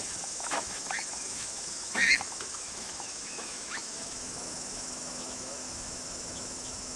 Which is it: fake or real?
fake